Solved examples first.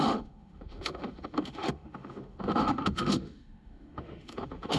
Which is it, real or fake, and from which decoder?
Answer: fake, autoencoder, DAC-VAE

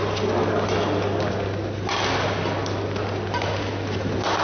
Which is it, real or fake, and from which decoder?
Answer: real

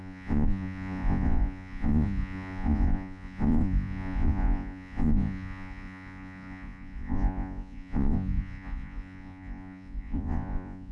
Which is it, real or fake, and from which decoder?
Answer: fake, vocoder, Vocos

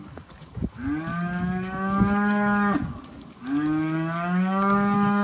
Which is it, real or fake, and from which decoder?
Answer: fake, codec, DAC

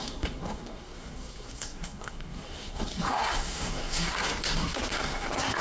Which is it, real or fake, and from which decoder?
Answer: fake, codec, SNAC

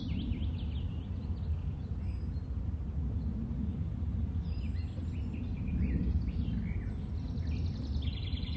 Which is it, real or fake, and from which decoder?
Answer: real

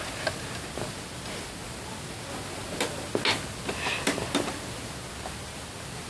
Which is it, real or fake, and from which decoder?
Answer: real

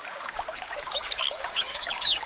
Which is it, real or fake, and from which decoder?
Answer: fake, codec, DAC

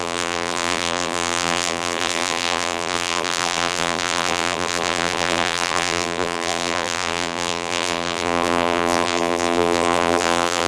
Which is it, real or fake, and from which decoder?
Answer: fake, vocoder, BigVGAN v2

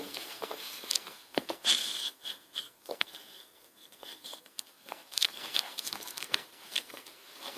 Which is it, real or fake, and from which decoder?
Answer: fake, codec, SNAC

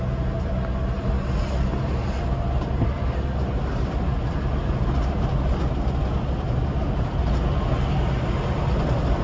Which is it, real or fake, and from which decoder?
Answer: real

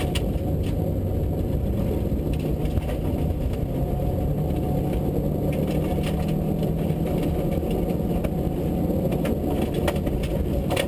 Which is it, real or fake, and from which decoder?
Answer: real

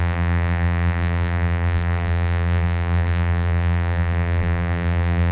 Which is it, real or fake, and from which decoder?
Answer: fake, vocoder, BigVGAN v2